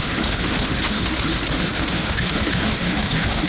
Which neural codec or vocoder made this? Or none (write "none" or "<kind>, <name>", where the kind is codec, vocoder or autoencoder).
autoencoder, DAC-VAE